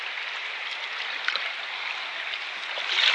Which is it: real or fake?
real